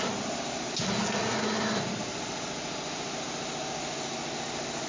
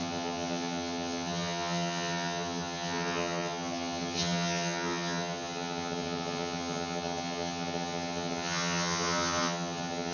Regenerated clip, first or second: second